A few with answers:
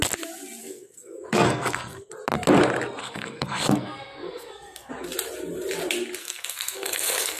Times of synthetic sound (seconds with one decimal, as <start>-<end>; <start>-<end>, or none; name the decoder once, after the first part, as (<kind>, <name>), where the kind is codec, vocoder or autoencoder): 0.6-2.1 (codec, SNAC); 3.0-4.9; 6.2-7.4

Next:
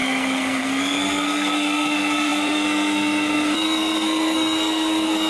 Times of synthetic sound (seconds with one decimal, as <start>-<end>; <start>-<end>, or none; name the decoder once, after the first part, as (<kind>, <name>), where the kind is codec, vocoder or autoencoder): 0.0-5.3 (codec, SNAC)

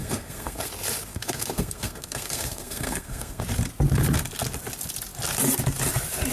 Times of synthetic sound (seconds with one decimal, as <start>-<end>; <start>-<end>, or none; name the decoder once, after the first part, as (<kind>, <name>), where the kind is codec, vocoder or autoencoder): 0.0-0.7 (codec, SNAC); 1.1-3.4

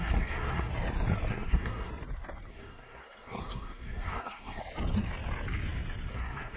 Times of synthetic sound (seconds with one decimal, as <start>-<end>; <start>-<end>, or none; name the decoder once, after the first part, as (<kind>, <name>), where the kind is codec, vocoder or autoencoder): 0.0-0.7 (codec, SNAC); 1.3-1.9; 2.5-4.6; 6.1-6.6

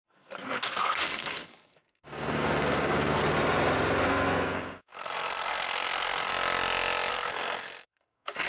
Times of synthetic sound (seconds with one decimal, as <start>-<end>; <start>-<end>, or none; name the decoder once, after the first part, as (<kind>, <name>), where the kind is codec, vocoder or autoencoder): 0.0-3.2 (codec, SNAC); 4.0-6.3; 7.1-8.5